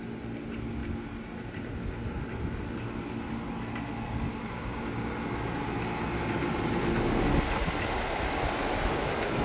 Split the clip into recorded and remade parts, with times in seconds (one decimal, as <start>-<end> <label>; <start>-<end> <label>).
0.0-4.3 recorded; 4.3-5.1 remade; 5.1-9.4 recorded